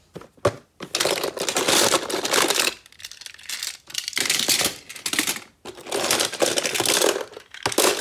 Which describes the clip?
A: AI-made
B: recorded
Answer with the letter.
B